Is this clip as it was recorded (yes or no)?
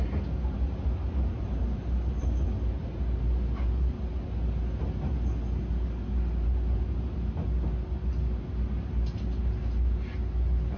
yes